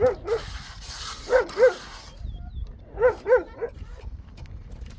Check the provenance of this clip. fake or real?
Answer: real